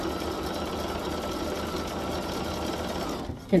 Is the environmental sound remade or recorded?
recorded